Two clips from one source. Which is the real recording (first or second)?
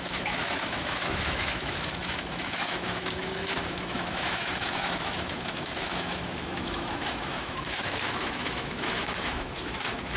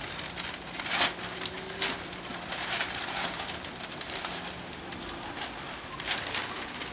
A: second